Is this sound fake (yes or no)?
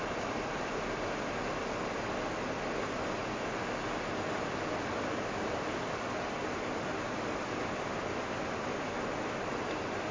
no